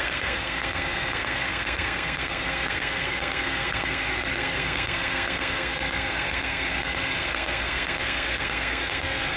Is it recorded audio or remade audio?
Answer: remade